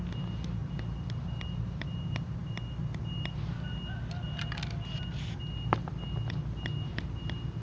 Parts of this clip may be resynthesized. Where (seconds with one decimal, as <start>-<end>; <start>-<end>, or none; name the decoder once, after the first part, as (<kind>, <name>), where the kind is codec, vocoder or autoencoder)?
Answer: none